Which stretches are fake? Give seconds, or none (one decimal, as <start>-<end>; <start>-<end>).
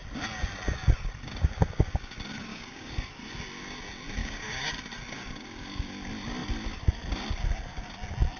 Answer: 2.5-3.1; 4.2-4.7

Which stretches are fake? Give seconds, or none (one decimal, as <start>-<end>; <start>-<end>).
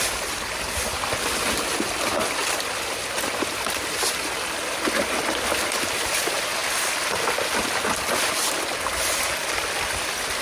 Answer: none